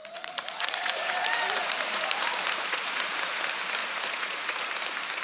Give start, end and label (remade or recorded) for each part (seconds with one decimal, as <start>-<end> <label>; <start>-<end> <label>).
0.0-3.1 remade; 3.1-3.8 recorded; 3.8-4.7 remade; 4.7-5.2 recorded